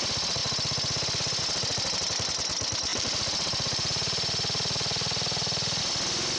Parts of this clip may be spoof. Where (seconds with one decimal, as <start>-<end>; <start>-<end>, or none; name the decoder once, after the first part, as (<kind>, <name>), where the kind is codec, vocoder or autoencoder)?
2.9-5.8 (vocoder, BigVGAN v2)